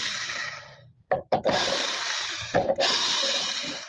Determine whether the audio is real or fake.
fake